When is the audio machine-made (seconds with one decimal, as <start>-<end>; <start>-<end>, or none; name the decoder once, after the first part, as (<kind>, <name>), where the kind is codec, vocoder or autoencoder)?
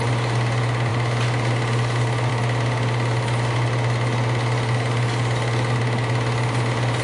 none